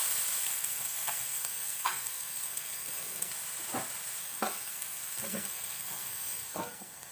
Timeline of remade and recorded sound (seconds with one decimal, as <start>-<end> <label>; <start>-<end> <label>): 0.0-0.4 recorded; 0.4-3.3 remade; 3.3-4.2 recorded; 4.2-7.1 remade